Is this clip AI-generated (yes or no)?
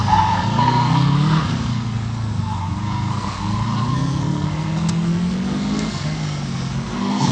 yes